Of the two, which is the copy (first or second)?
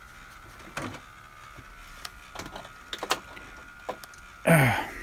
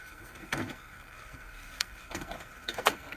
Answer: second